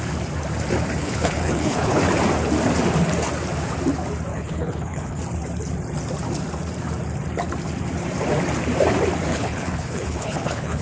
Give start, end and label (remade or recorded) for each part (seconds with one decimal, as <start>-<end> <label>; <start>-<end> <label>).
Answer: 0.0-1.0 recorded; 1.0-2.0 remade; 2.0-4.3 recorded; 4.3-5.2 remade; 5.2-9.3 recorded; 9.3-10.8 remade

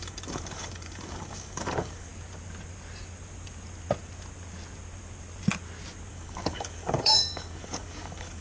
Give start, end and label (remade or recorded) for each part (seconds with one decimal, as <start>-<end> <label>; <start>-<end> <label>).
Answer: 0.0-2.1 remade; 2.1-6.1 recorded; 6.1-8.4 remade